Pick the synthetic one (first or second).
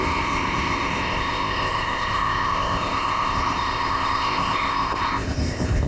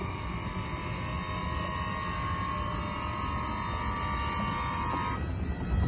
first